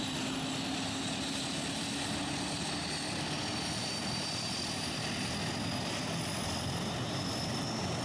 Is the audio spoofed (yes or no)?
no